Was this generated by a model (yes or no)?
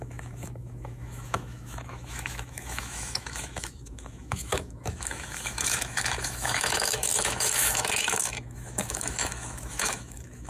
yes